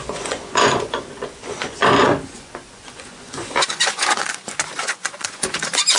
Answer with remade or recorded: remade